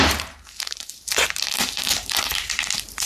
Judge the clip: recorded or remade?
remade